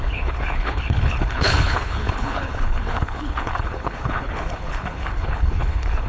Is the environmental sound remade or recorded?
remade